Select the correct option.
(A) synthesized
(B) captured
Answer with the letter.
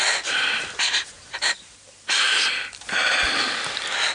B